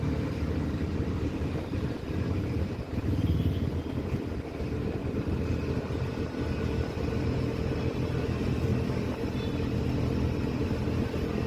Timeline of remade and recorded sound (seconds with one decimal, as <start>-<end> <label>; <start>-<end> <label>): 0.0-11.5 recorded